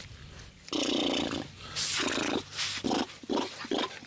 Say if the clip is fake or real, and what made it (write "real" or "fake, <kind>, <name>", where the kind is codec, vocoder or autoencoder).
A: real